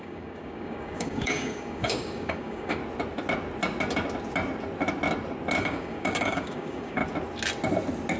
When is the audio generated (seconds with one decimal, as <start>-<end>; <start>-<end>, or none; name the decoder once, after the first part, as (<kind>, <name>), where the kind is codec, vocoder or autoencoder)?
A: 0.0-2.8 (codec, DAC); 5.6-7.0